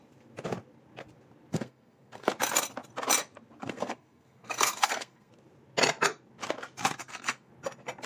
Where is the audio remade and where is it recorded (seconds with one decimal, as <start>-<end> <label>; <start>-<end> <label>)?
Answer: 0.0-1.5 recorded; 1.5-2.3 remade; 2.3-3.6 recorded; 3.6-5.3 remade; 5.3-7.0 recorded; 7.0-7.5 remade; 7.5-8.1 recorded